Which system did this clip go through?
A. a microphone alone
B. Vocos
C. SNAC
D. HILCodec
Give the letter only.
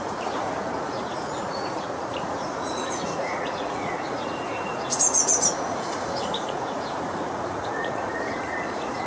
B